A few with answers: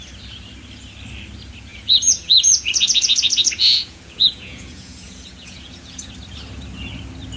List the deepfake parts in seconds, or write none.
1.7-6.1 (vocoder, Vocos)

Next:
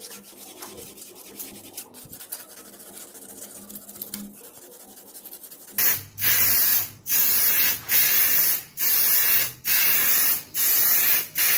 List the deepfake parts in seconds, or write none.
6.7-8.0 (vocoder, Vocos)

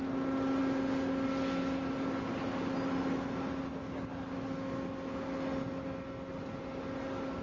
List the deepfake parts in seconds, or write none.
none